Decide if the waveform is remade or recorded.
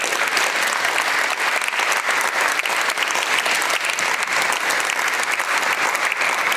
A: recorded